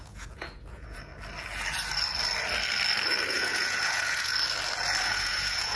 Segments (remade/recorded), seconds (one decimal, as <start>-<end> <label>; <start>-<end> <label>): 0.0-1.1 remade; 1.1-3.3 recorded; 3.3-4.3 remade; 4.3-5.0 recorded; 5.0-5.8 remade